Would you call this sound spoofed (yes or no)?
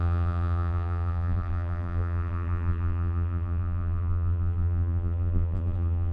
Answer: yes